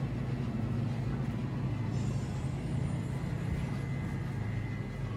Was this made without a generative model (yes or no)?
yes